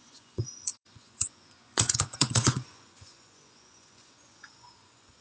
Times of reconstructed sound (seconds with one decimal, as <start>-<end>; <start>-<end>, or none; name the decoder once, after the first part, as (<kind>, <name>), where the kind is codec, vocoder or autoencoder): 0.0-5.2 (vocoder, Vocos)

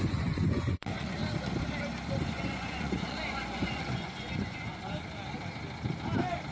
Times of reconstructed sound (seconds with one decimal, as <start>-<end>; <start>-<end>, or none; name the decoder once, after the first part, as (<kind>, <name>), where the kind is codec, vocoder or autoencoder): 0.0-1.2 (vocoder, Vocos); 2.3-4.7

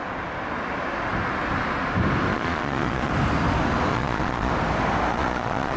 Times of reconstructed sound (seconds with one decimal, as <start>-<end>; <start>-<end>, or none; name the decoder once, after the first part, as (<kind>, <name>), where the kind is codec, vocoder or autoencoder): 2.3-3.1 (vocoder, Vocos); 3.9-4.5; 5.1-5.8

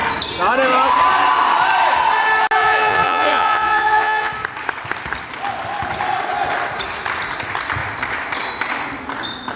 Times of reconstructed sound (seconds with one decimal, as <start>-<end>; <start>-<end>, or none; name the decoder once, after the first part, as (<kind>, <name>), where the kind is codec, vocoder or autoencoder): 2.6-4.3 (vocoder, Vocos)

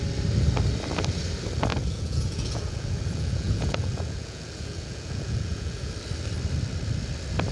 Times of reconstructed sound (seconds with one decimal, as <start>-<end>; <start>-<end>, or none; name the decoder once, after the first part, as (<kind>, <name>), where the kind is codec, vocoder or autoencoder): 1.7-5.9 (vocoder, Vocos)

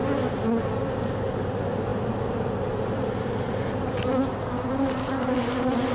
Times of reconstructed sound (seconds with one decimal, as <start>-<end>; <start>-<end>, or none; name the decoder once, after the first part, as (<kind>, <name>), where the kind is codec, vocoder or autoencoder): none

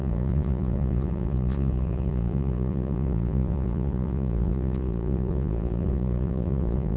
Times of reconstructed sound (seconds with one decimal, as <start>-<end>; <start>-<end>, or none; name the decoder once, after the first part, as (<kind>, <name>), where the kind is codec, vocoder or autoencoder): 0.0-7.0 (vocoder, Vocos)

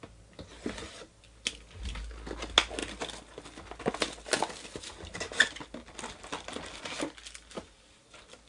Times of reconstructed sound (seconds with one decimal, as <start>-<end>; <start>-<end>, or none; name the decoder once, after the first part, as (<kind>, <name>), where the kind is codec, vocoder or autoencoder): none